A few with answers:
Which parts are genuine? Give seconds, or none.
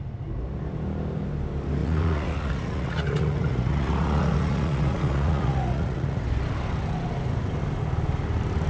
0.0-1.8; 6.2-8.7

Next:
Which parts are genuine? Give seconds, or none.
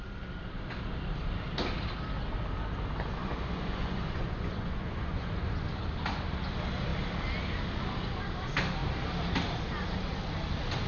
0.0-3.2; 5.7-10.9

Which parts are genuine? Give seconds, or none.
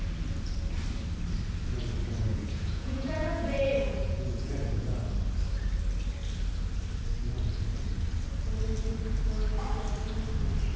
0.0-2.3; 5.0-10.8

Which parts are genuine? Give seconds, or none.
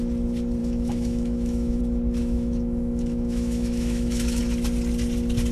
0.0-0.6; 1.8-2.2; 4.4-5.5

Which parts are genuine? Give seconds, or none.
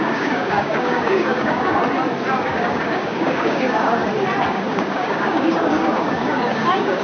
1.8-2.4; 4.0-4.5